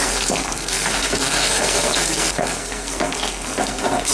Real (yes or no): no